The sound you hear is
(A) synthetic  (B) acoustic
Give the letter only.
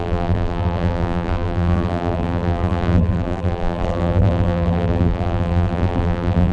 A